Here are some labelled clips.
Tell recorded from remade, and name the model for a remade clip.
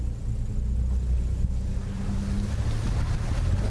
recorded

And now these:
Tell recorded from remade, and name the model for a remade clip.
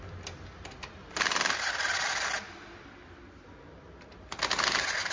recorded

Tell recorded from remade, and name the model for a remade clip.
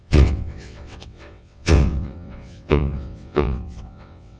remade, vocoder, WaveNeXt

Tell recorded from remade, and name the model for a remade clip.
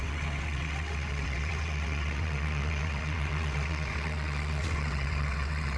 remade, vocoder, WaveNeXt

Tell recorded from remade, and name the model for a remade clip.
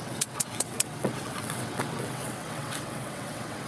remade, vocoder, WaveNeXt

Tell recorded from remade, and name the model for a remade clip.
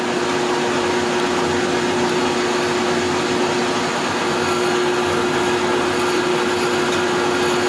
recorded